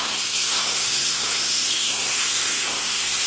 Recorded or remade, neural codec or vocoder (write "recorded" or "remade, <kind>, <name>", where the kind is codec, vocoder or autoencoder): remade, codec, SNAC